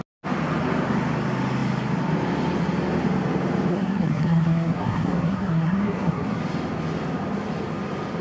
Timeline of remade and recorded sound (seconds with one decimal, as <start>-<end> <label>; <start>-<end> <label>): 0.0-3.7 recorded; 3.7-6.4 remade; 6.4-8.2 recorded